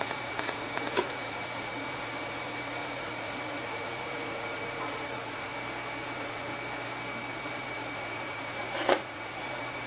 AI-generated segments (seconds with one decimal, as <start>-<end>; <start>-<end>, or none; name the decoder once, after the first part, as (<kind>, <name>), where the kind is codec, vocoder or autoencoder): 0.0-5.5 (vocoder, Vocos); 6.0-6.5; 7.3-9.9